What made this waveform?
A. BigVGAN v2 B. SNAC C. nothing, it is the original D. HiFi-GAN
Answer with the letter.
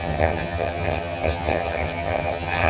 D